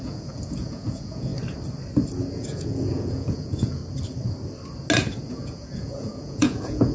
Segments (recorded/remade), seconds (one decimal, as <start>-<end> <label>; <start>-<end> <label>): 0.0-1.3 remade; 1.3-2.3 recorded; 2.3-3.8 remade; 3.8-5.3 recorded; 5.3-6.9 remade